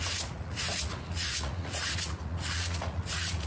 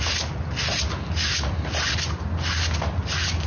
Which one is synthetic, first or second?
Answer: first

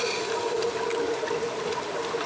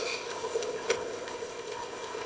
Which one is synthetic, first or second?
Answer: second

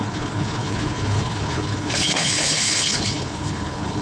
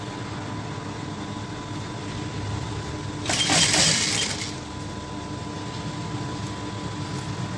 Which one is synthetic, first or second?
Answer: first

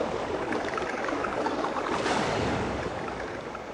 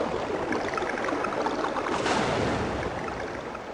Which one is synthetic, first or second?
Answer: first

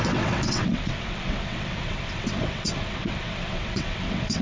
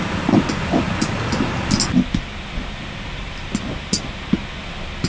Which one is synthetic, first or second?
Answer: first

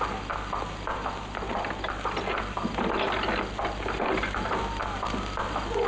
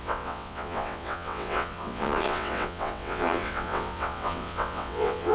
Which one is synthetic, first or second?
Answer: second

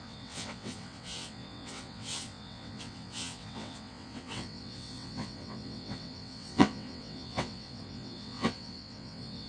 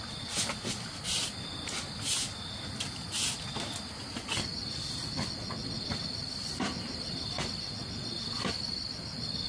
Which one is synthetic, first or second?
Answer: first